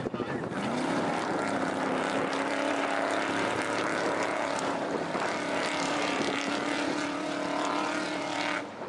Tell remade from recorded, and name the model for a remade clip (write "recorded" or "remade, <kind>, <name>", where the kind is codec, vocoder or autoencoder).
remade, vocoder, BigVGAN v2